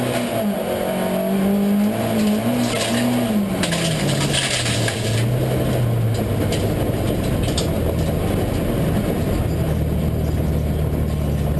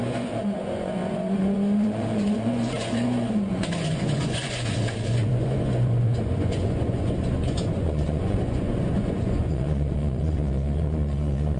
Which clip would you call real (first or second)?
first